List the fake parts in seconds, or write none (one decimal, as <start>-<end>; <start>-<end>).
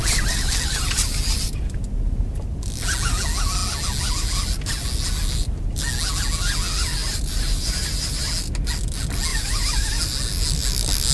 7.0-8.3; 9.3-10.0